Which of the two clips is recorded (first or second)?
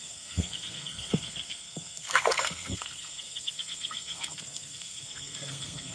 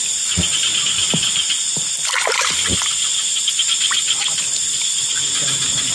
second